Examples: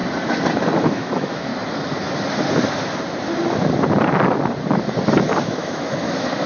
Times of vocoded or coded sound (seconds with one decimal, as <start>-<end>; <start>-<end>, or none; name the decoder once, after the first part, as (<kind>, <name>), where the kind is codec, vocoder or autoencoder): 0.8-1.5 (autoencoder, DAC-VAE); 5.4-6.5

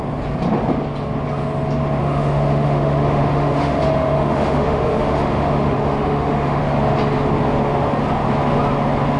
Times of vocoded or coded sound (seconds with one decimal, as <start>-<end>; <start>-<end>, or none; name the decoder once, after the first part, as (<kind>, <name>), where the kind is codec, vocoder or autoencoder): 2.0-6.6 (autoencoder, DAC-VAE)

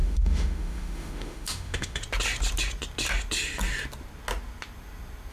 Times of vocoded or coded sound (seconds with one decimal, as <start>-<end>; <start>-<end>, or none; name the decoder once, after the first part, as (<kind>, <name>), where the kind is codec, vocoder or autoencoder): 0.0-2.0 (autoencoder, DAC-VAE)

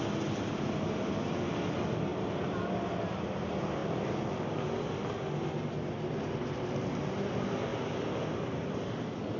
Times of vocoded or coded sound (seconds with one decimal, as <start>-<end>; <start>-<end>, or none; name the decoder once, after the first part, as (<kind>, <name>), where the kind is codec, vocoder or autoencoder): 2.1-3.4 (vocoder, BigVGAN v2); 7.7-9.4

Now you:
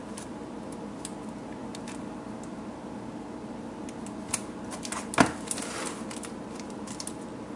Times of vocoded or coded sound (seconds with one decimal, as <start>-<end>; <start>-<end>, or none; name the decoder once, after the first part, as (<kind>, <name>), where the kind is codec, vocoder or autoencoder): none

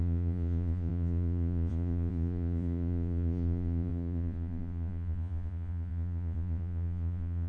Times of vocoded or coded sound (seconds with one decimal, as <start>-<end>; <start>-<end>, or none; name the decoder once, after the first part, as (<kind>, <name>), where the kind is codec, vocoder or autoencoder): 0.0-7.5 (vocoder, Vocos)